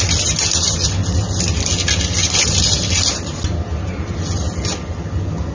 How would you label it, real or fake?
real